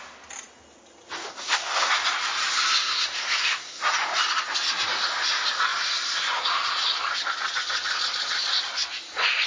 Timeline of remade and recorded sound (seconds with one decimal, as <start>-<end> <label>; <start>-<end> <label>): 0.0-1.3 recorded; 1.3-1.9 remade; 1.9-2.8 recorded; 2.8-3.8 remade; 3.8-9.5 recorded